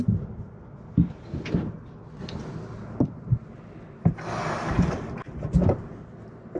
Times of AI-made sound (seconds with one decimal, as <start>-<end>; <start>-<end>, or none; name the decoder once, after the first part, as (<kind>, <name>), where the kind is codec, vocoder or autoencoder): none